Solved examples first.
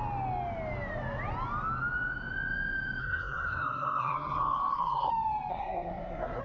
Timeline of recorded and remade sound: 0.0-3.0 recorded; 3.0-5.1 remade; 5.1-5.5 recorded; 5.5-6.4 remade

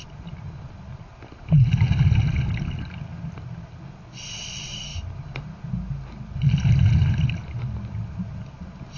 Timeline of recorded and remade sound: 0.0-9.0 recorded

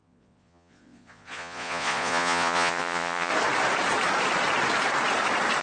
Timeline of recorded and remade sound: 0.0-3.3 remade; 3.3-5.6 recorded

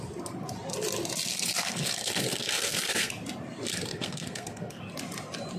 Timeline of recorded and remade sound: 0.0-1.3 recorded; 1.3-3.1 remade; 3.1-3.7 recorded; 3.7-4.8 remade; 4.8-5.6 recorded

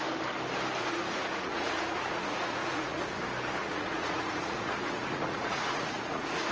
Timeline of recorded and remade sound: 0.0-0.8 recorded; 0.8-3.2 remade; 3.2-3.6 recorded; 3.6-6.5 remade

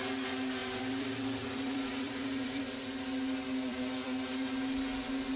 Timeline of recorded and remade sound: 0.0-0.6 recorded; 0.6-2.6 remade; 2.6-3.7 recorded; 3.7-4.5 remade; 4.5-5.4 recorded